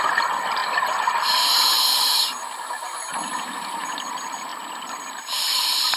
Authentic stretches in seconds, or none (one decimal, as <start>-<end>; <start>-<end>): 0.6-1.2; 3.1-3.6